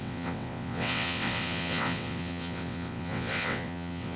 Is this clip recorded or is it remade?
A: remade